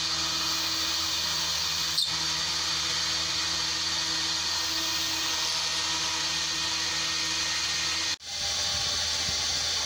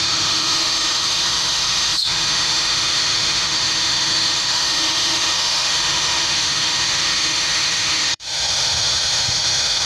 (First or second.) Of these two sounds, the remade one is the second